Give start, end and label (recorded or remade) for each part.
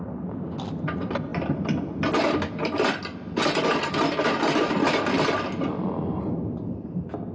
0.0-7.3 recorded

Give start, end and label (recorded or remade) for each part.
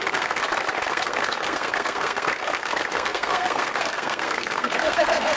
0.0-0.4 remade; 0.4-0.9 recorded; 0.9-5.4 remade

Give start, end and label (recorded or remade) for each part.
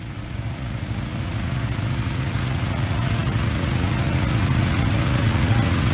0.0-5.9 remade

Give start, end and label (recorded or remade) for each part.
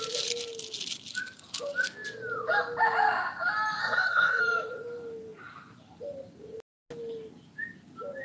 0.0-3.8 recorded; 3.8-4.4 remade; 4.4-8.2 recorded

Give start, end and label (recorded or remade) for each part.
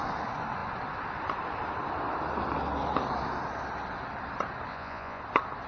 0.0-4.7 recorded; 4.7-5.2 remade; 5.2-5.7 recorded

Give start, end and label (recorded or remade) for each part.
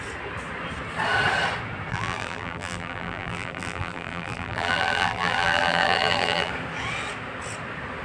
0.0-1.9 recorded; 1.9-6.5 remade; 6.5-8.0 recorded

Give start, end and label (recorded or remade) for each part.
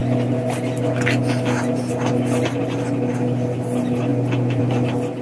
0.0-5.2 recorded